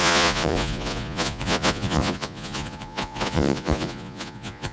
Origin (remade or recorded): remade